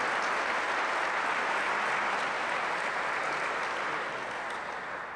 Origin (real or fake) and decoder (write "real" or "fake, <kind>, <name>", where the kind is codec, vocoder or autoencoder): real